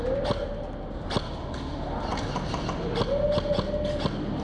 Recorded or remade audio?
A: recorded